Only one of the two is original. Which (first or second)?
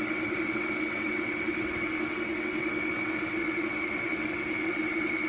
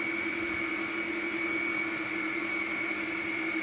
second